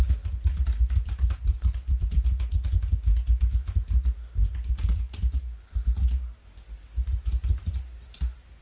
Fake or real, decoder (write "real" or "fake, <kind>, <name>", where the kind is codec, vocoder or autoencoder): real